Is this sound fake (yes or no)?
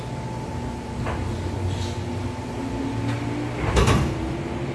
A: no